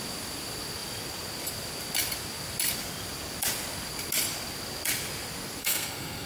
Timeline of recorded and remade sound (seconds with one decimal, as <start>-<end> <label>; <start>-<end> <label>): 0.0-5.6 recorded; 5.6-6.3 remade